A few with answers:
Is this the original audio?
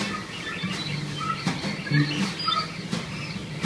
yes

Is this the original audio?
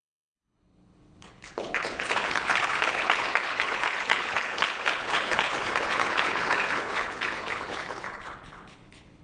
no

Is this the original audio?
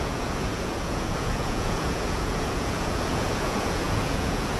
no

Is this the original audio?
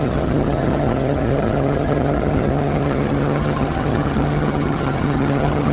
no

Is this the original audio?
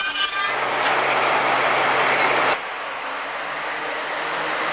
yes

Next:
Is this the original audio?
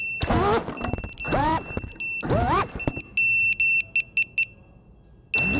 yes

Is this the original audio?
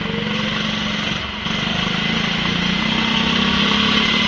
yes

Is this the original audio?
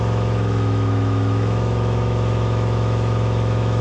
no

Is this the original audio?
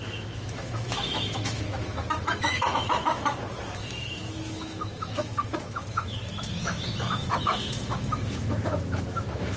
no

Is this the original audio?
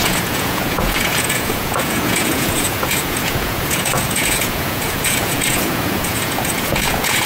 no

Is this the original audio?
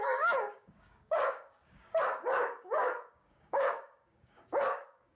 no